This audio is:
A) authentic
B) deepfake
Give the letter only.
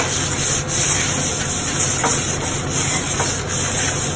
A